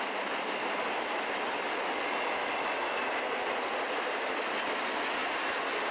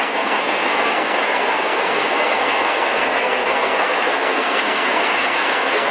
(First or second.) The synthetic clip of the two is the second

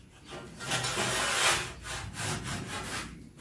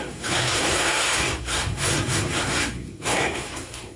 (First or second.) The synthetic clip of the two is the second